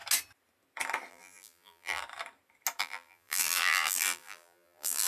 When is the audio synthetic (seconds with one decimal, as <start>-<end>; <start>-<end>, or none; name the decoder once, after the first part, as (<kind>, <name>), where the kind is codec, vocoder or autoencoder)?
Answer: 1.1-2.0 (vocoder, BigVGAN v2); 2.8-5.1